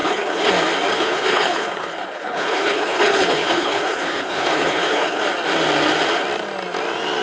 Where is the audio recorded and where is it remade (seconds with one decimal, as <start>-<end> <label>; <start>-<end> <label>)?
0.0-0.5 remade; 0.5-0.9 recorded; 0.9-5.2 remade; 5.2-7.2 recorded